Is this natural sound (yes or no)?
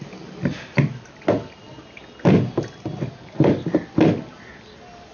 yes